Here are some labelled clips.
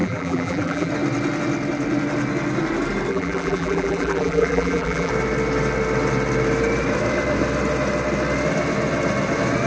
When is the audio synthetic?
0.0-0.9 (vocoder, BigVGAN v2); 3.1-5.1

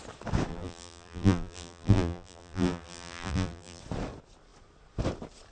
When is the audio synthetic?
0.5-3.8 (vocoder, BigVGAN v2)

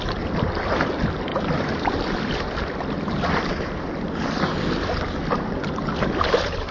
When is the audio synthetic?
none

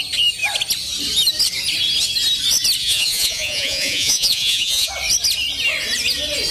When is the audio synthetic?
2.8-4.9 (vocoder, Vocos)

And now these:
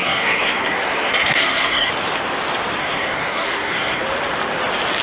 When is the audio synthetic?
0.0-1.9 (codec, SNAC); 2.8-4.0